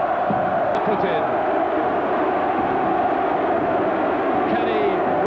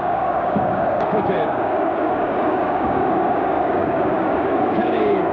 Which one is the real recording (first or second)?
first